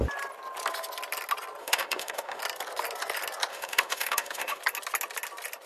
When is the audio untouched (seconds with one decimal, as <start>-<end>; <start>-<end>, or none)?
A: 0.0-1.6; 2.4-3.5; 4.6-5.7